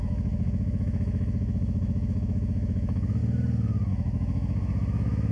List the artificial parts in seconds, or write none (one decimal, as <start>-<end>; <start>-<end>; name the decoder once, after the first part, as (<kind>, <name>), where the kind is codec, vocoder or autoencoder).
0.0-3.2 (autoencoder, DAC-VAE); 3.9-5.3